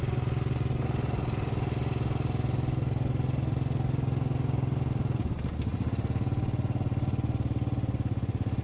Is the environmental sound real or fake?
real